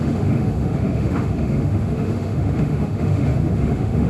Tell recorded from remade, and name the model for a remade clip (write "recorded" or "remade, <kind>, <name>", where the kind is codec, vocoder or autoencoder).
remade, autoencoder, DAC-VAE